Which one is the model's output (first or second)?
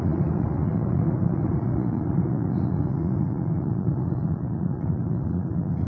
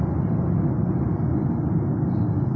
first